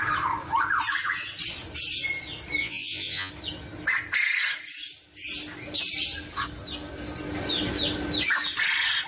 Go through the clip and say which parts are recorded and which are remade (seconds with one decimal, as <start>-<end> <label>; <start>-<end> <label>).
0.0-2.6 recorded; 2.6-3.3 remade; 3.3-9.1 recorded